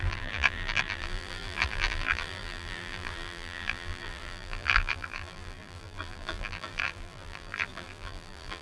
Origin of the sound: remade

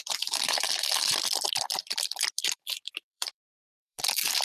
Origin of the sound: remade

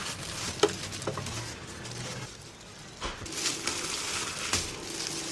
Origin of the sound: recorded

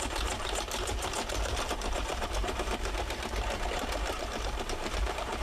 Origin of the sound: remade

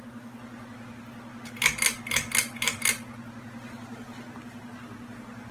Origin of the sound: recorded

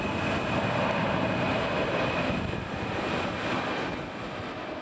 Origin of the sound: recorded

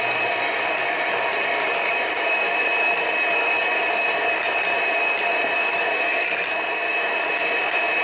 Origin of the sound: remade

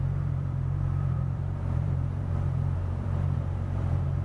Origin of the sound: remade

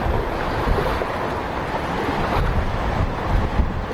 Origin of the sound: remade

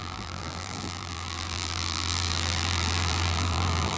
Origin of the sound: remade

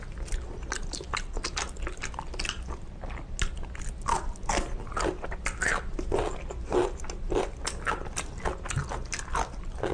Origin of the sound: recorded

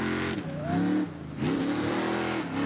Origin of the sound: recorded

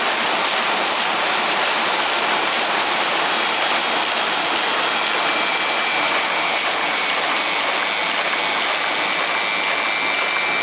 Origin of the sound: recorded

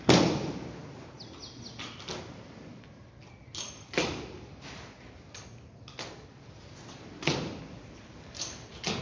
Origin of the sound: recorded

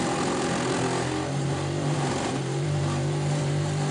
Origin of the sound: remade